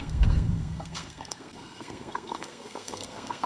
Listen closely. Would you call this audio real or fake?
fake